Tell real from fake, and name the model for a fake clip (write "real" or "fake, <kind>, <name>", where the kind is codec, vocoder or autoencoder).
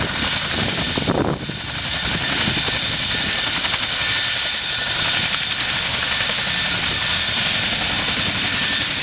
real